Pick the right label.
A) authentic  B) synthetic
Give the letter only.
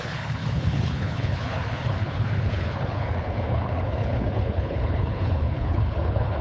B